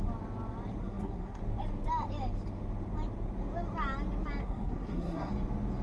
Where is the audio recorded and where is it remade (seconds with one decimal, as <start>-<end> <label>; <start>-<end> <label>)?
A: 0.0-0.8 recorded; 0.8-1.4 remade; 1.4-4.4 recorded; 4.4-5.3 remade; 5.3-5.8 recorded